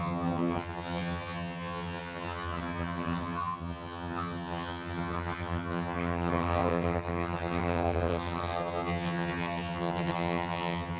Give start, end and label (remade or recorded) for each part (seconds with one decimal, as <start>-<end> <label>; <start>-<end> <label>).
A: 0.0-11.0 remade